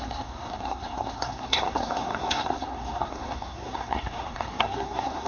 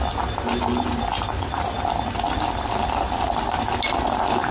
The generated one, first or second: first